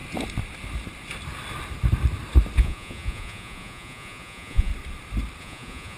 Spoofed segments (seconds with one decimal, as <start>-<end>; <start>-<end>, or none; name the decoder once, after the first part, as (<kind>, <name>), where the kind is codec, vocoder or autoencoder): 2.6-4.7 (vocoder, Vocos); 5.4-6.0